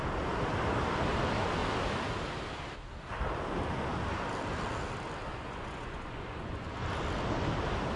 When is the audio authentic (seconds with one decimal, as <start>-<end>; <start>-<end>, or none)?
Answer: 0.0-5.3; 6.7-8.0